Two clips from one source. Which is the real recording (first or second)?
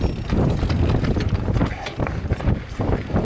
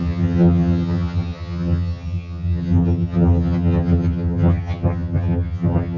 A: first